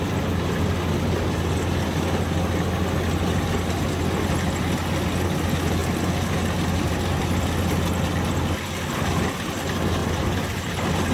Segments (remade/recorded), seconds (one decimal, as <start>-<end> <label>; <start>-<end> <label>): 0.0-10.0 recorded; 10.0-10.7 remade; 10.7-11.1 recorded